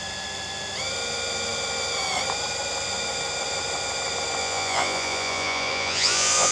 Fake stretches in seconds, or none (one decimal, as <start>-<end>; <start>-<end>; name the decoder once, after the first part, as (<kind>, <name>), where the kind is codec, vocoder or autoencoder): 4.4-6.5 (vocoder, Vocos)